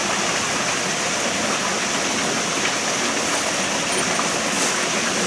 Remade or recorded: recorded